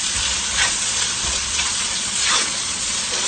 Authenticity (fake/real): fake